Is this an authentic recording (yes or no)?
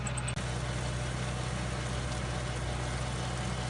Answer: yes